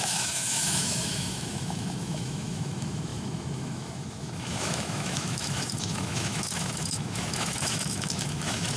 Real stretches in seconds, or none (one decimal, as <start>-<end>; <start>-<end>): none